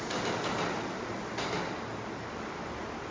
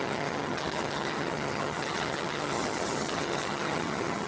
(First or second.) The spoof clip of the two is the second